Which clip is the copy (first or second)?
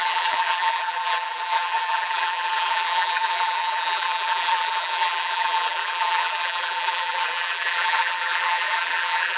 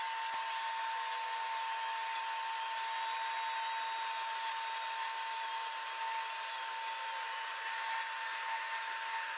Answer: first